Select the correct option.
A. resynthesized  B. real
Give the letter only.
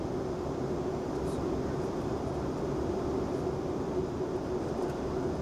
B